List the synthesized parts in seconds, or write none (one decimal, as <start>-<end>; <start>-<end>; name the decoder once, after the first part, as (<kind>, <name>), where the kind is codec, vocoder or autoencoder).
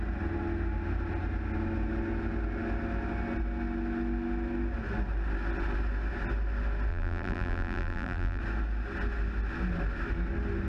6.9-8.4 (vocoder, BigVGAN v2)